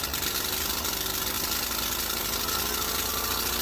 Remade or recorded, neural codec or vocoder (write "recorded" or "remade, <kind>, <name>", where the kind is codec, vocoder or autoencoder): recorded